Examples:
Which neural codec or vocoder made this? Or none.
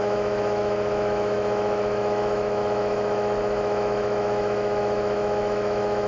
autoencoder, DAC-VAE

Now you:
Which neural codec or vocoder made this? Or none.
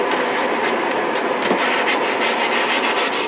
none